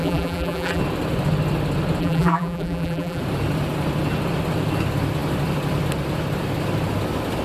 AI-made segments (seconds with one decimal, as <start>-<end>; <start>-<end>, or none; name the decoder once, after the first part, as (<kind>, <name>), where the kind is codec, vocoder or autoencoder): 0.0-0.8 (vocoder, BigVGAN v2); 2.0-3.2